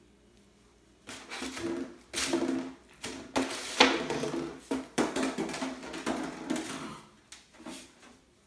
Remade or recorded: recorded